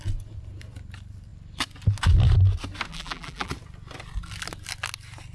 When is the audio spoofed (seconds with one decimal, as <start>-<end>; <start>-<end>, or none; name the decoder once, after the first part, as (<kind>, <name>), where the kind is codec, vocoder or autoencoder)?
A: 2.9-3.5 (vocoder, BigVGAN v2)